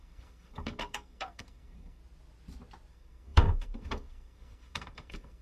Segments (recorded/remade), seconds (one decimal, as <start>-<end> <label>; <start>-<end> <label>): 0.0-2.0 remade; 2.0-2.9 recorded; 2.9-5.4 remade